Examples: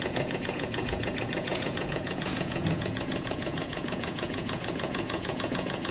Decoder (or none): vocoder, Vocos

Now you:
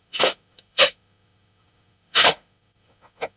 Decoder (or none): autoencoder, DAC-VAE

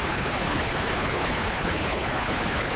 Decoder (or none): codec, HILCodec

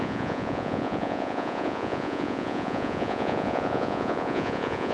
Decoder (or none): vocoder, Vocos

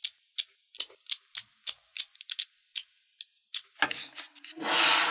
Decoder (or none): none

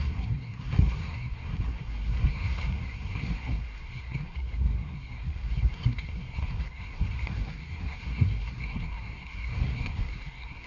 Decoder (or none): codec, SNAC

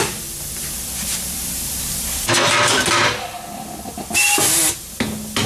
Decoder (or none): none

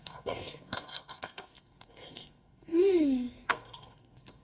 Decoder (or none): codec, SNAC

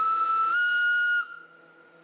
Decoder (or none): none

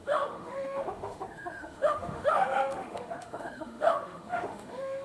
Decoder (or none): autoencoder, DAC-VAE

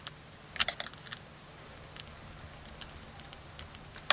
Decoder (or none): none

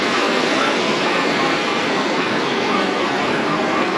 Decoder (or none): codec, SNAC